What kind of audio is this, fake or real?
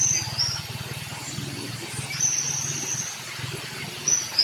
real